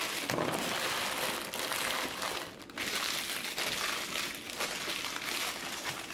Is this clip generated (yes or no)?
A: no